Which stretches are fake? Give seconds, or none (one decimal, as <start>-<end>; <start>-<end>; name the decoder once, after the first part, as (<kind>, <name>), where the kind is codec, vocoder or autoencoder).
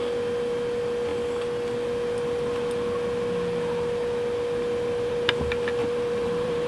5.8-6.7 (vocoder, BigVGAN v2)